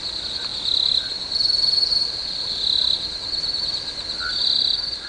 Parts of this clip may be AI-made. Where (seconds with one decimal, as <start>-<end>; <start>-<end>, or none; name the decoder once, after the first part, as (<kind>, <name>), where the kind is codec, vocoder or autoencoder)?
none